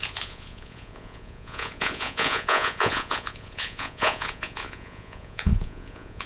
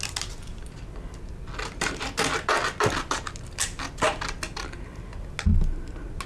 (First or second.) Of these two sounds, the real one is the second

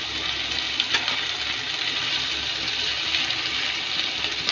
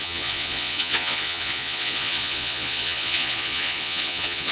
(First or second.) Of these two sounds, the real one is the first